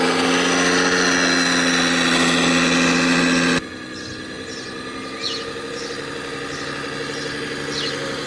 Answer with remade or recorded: recorded